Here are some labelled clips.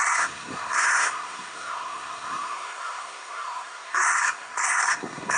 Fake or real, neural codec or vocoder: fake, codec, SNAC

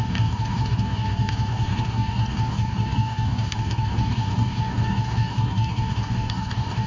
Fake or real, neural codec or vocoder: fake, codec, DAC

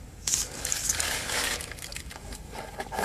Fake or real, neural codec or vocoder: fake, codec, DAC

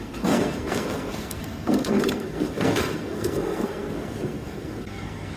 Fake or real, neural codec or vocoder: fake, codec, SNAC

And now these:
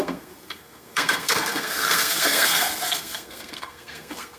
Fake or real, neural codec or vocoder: fake, codec, SNAC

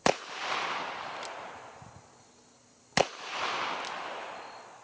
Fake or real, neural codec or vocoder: real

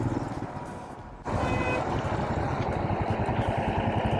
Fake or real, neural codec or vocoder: real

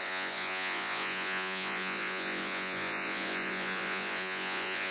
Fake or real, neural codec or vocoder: fake, vocoder, Vocos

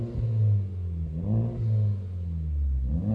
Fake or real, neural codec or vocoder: real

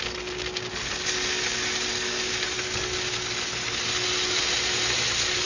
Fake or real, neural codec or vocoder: real